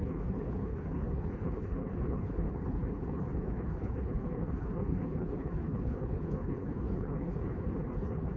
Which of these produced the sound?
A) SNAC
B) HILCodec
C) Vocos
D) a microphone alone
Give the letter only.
B